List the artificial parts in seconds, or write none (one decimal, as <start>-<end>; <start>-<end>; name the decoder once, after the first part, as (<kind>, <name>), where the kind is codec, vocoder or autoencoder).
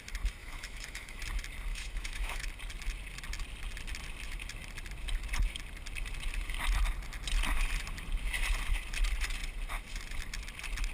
0.4-1.2 (autoencoder, DAC-VAE); 1.7-2.5